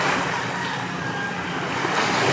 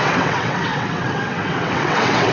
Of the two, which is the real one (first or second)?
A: first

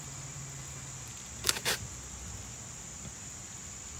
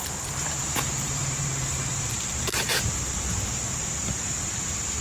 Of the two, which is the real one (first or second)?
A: first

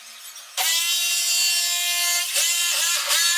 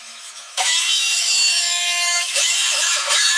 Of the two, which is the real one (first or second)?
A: first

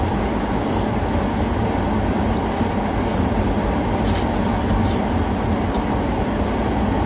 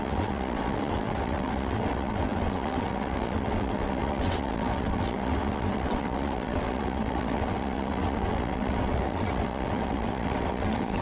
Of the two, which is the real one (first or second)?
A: first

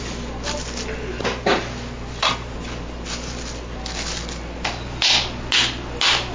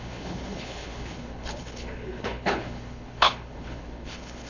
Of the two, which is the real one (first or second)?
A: first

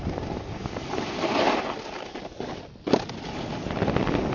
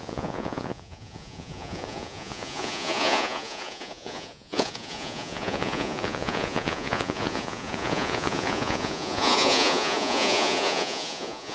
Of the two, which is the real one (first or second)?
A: first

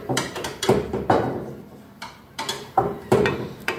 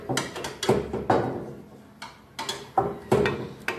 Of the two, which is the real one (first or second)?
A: second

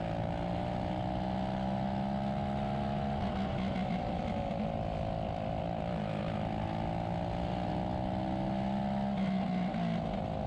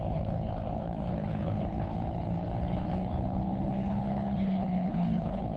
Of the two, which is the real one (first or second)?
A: first